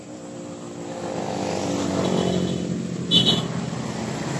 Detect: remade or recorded recorded